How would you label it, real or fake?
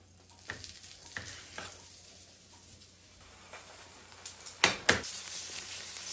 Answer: real